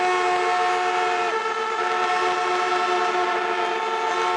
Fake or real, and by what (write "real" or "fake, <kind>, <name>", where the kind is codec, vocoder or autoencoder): real